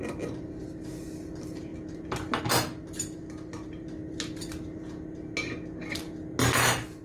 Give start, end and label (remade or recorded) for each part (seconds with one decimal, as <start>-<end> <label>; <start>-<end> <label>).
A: 0.0-7.0 recorded